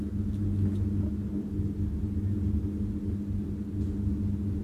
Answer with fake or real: real